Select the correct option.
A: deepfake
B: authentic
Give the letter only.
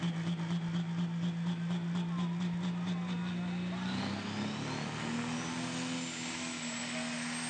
B